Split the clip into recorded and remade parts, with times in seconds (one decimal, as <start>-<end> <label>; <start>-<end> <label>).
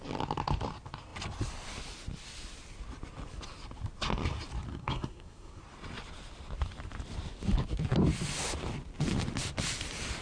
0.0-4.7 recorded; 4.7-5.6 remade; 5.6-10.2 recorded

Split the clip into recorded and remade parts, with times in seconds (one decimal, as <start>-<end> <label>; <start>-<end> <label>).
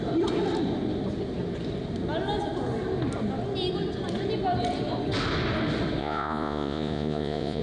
0.0-6.0 recorded; 6.0-7.6 remade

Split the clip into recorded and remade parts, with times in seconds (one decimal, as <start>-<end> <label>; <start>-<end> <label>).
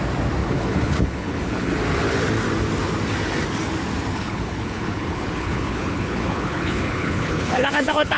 0.0-0.4 recorded; 0.4-1.7 remade; 1.7-4.1 recorded; 4.1-8.2 remade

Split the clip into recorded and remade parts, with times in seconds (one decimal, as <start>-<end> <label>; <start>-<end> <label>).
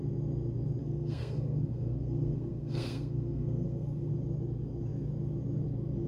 0.0-0.8 recorded; 0.8-4.1 remade; 4.1-6.1 recorded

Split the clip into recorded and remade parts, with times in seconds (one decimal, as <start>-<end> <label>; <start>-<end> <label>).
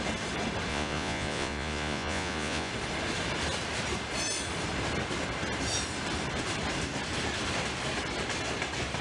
0.0-0.7 recorded; 0.7-2.7 remade; 2.7-9.0 recorded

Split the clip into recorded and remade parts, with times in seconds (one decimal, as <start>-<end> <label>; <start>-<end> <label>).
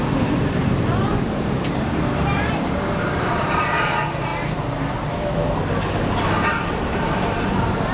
0.0-7.9 remade